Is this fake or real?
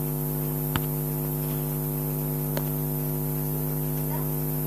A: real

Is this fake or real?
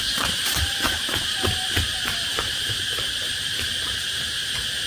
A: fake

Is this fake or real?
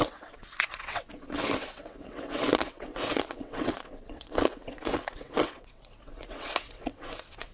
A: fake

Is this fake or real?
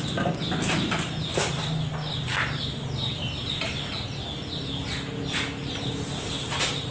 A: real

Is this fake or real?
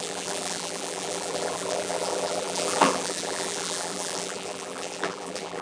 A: fake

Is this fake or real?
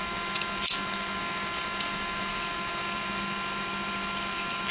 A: real